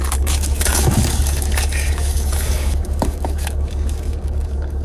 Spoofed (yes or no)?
yes